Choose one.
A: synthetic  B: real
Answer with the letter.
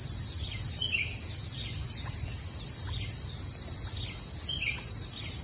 B